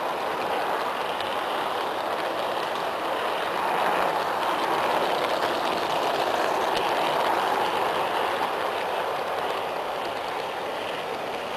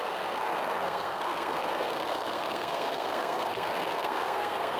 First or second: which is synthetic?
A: second